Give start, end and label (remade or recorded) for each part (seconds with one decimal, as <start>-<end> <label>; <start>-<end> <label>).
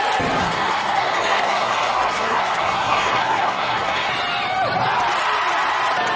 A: 0.0-0.4 recorded; 0.4-4.1 remade; 4.1-6.2 recorded